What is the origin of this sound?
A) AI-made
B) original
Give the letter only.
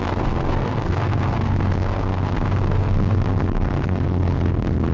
A